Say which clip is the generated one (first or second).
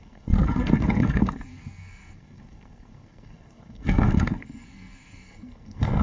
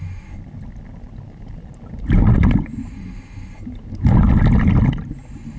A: first